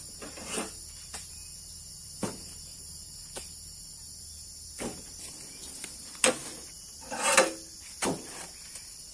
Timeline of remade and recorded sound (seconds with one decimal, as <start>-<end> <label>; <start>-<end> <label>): 0.0-9.1 recorded